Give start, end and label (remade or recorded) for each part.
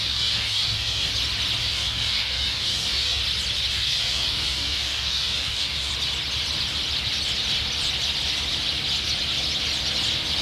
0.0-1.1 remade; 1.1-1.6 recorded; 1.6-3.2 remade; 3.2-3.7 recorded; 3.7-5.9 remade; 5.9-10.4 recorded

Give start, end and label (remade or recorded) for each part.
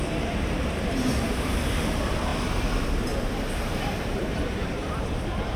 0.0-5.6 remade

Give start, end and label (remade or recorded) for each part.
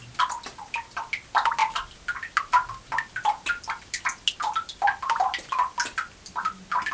0.0-6.9 recorded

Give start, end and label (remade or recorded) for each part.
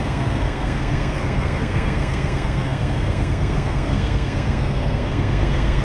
0.0-5.8 remade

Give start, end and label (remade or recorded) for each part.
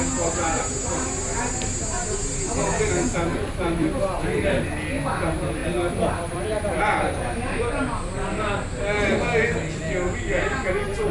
0.0-3.3 recorded; 3.3-4.7 remade; 4.7-5.6 recorded; 5.6-6.8 remade; 6.8-11.1 recorded